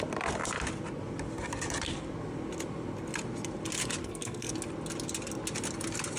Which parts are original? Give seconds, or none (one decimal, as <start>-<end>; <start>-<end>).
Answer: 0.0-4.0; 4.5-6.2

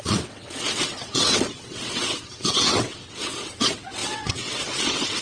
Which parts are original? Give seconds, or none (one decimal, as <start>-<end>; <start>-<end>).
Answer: none

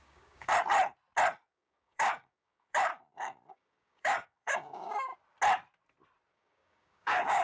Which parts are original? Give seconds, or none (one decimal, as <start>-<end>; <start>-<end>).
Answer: 0.5-1.5; 2.9-3.5; 5.1-6.3

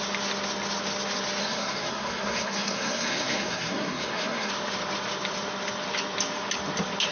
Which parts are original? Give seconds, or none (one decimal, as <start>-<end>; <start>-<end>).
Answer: 0.0-1.4; 4.5-7.1

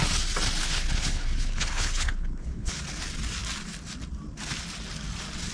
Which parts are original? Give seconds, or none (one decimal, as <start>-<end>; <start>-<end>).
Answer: 0.0-0.6; 2.8-5.5

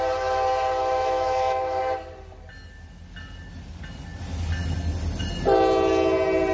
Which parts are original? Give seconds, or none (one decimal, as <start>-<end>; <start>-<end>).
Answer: 0.0-0.8; 1.8-6.5

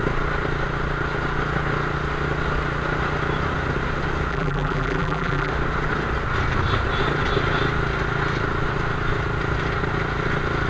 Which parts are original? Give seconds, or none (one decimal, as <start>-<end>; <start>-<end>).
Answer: 0.0-4.3; 5.5-10.7